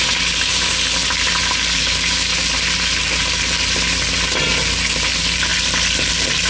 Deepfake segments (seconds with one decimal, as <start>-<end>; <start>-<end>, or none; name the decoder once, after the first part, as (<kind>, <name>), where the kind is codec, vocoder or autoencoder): none

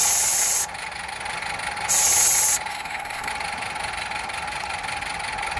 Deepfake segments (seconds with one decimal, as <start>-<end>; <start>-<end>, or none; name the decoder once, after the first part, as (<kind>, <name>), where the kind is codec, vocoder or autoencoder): 2.7-3.3 (codec, SNAC)

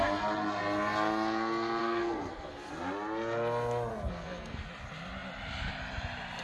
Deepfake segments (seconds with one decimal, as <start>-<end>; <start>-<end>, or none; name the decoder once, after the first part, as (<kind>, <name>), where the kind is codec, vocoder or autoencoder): 1.8-2.7 (codec, SNAC); 3.9-4.7

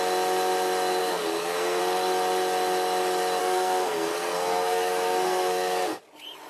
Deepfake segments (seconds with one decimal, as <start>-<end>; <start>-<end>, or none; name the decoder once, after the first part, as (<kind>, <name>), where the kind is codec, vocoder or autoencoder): 1.0-1.8 (codec, SNAC); 3.4-6.0